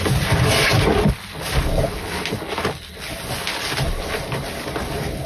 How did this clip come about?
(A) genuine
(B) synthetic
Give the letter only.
A